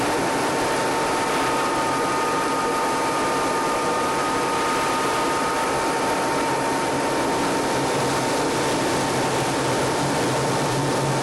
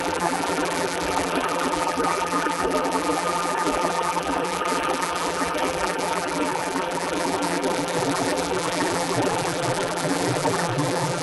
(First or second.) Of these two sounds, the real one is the first